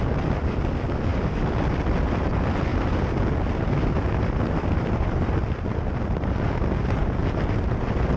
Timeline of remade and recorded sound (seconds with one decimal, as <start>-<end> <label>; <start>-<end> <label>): 0.0-8.2 recorded